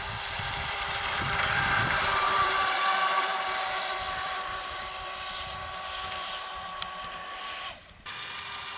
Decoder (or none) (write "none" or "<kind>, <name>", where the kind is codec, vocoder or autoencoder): vocoder, BigVGAN v2